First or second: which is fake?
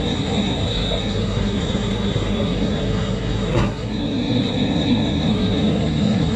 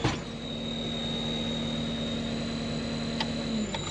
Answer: first